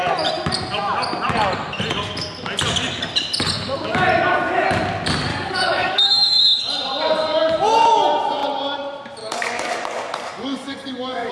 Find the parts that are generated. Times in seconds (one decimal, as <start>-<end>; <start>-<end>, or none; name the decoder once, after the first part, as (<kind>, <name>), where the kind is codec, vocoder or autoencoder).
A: 5.3-6.6 (codec, DAC); 9.2-11.3